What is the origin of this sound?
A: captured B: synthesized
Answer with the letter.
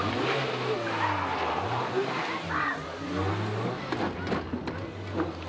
A